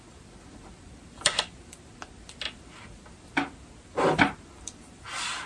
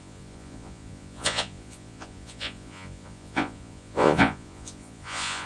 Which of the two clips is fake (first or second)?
second